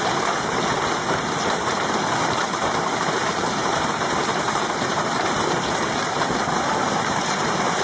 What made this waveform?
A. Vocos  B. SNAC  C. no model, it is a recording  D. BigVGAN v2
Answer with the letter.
D